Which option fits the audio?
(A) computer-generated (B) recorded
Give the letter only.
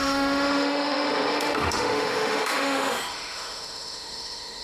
A